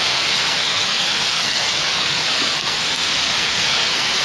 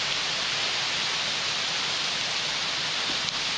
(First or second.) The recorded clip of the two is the second